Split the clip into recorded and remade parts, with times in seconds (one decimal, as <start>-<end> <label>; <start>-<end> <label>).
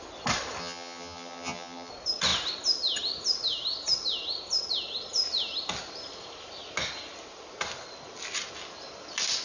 0.0-0.6 recorded; 0.6-1.9 remade; 1.9-9.4 recorded